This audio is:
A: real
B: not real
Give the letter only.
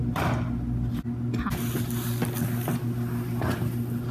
A